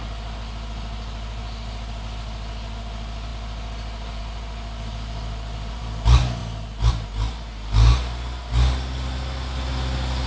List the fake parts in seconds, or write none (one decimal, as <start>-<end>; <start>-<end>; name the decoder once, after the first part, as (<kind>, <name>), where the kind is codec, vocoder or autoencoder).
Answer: none